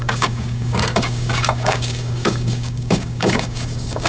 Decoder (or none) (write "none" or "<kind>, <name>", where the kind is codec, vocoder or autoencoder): codec, DAC